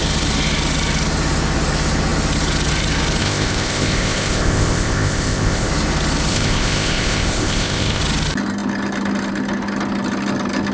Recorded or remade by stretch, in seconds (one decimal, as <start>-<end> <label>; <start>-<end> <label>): 0.0-3.2 recorded; 3.2-5.7 remade; 5.7-6.3 recorded; 6.3-8.0 remade; 8.0-10.7 recorded